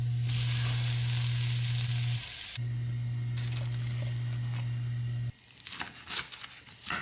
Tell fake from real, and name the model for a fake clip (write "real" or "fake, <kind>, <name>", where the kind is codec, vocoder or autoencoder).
real